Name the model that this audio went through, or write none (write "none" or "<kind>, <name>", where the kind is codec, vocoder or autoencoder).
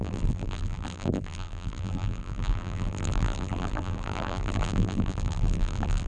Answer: vocoder, BigVGAN v2